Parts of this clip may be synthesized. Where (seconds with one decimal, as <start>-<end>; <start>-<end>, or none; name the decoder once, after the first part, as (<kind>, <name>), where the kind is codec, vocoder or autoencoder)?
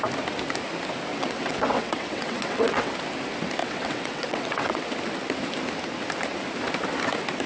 1.1-2.9 (vocoder, WaveNeXt); 3.6-4.8